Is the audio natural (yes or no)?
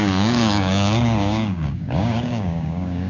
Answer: no